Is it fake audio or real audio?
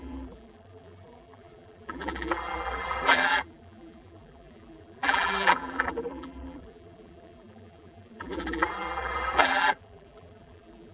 fake